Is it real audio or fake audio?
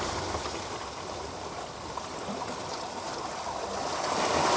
real